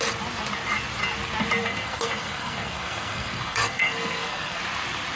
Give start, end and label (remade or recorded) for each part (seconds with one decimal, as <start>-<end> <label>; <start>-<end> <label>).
0.0-1.6 recorded; 1.6-4.6 remade; 4.6-5.2 recorded